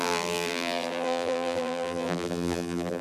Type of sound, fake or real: fake